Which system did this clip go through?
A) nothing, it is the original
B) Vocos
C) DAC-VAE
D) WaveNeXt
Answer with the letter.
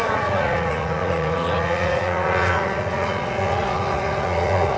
B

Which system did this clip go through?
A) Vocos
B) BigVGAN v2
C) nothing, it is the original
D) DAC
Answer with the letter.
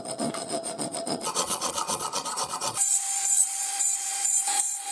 A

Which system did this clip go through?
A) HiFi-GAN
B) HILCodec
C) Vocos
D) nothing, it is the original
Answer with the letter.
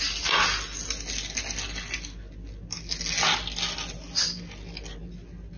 D